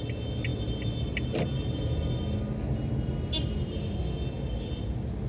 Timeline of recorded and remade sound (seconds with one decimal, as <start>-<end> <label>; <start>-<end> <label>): 0.0-5.3 recorded